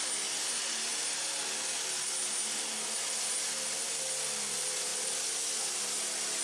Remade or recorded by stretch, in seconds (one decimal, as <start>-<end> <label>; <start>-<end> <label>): 0.0-6.4 recorded